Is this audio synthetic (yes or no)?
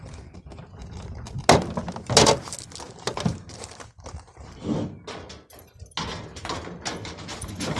no